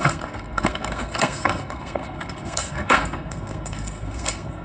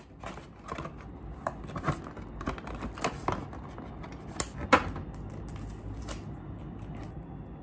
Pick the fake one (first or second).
first